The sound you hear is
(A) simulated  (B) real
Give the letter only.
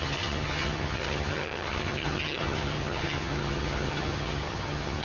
A